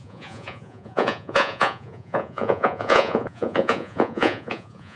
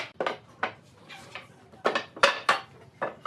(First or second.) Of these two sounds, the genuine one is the second